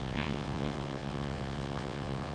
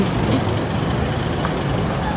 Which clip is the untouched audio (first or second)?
second